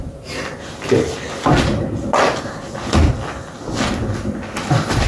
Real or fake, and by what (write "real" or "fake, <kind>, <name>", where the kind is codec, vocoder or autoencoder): real